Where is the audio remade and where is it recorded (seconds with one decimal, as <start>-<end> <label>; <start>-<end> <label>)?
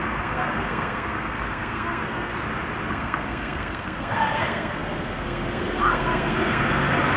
0.0-2.3 remade; 2.3-2.9 recorded; 2.9-7.2 remade